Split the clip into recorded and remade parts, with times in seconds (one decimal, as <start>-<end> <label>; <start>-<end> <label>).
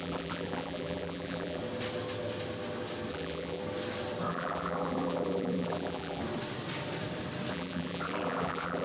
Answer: 0.0-1.6 remade; 1.6-3.1 recorded; 3.1-3.6 remade; 3.6-4.3 recorded; 4.3-6.2 remade; 6.2-7.5 recorded; 7.5-8.8 remade